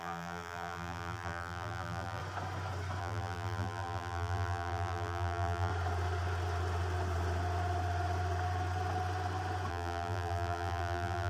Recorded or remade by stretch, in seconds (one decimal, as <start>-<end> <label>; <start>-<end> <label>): 0.0-2.2 remade; 2.2-3.0 recorded; 3.0-5.7 remade; 5.7-9.7 recorded; 9.7-11.3 remade

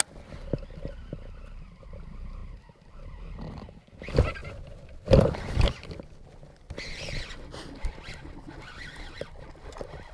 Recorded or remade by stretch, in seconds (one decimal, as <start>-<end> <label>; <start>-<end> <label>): 0.0-10.1 recorded

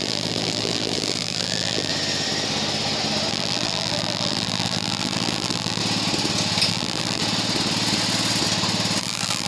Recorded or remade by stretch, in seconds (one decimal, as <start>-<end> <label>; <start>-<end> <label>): 0.0-1.9 remade; 1.9-3.3 recorded; 3.3-5.8 remade; 5.8-6.7 recorded; 6.7-7.2 remade; 7.2-9.0 recorded; 9.0-9.5 remade

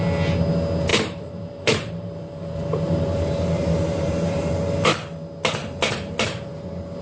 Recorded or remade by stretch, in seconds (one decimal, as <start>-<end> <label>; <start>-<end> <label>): 0.0-0.9 recorded; 0.9-4.5 remade; 4.5-7.0 recorded

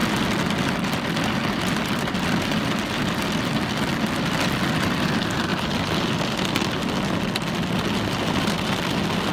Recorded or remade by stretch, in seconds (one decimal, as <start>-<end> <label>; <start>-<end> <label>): 0.0-9.3 recorded

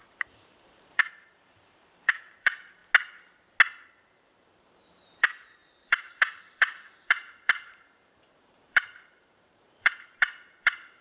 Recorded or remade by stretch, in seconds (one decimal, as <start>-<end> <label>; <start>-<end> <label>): 0.0-2.8 remade; 2.8-3.8 recorded; 3.8-11.0 remade

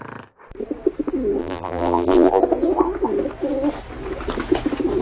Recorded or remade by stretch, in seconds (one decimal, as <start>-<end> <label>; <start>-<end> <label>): 0.0-1.4 recorded; 1.4-2.4 remade; 2.4-5.0 recorded

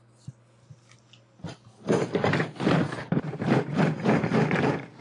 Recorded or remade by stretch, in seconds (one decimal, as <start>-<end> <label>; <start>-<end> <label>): 0.0-1.4 recorded; 1.4-4.4 remade; 4.4-5.0 recorded